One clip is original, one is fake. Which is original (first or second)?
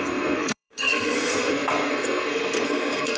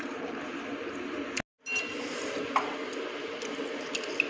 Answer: second